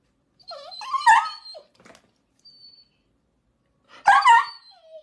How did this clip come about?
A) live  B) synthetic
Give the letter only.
A